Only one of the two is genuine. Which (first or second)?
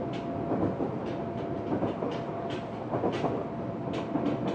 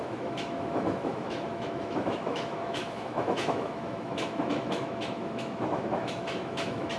first